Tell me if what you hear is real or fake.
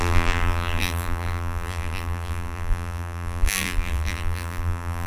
fake